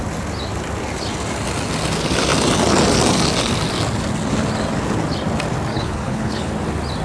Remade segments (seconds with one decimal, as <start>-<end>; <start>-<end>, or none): 5.7-6.5